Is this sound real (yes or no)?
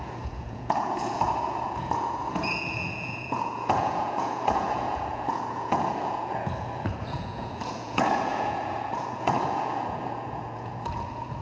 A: no